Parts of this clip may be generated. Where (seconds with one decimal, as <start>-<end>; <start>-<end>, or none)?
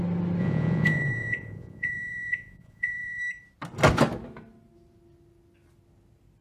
0.4-3.2